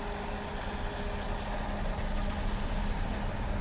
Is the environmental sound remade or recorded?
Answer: recorded